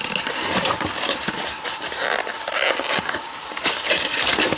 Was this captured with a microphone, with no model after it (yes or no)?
yes